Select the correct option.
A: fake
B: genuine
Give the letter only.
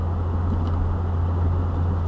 B